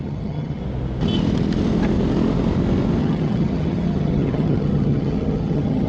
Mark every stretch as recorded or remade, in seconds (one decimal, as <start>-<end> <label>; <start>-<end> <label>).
0.0-0.6 remade; 0.6-3.0 recorded; 3.0-5.9 remade